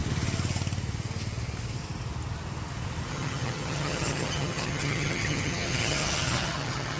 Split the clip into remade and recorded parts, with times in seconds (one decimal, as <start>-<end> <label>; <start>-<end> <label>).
0.0-3.1 recorded; 3.1-7.0 remade